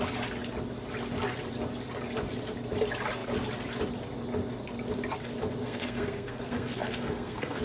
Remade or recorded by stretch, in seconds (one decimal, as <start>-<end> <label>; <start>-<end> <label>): 0.0-5.6 recorded; 5.6-7.6 remade